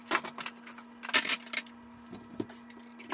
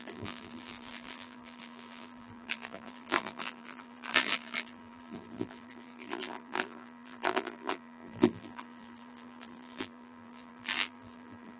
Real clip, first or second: first